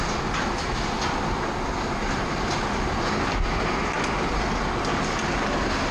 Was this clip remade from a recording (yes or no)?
no